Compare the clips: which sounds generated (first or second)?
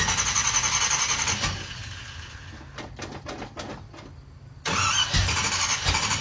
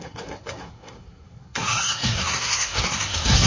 second